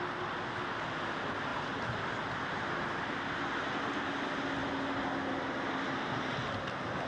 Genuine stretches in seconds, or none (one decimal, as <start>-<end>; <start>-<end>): 0.0-7.1